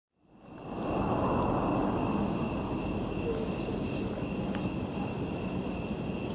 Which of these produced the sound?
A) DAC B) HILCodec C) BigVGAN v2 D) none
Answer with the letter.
D